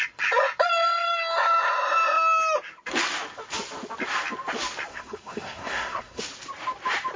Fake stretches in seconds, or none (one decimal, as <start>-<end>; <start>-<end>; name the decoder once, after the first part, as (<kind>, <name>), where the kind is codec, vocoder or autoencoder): 4.9-6.2 (codec, SNAC)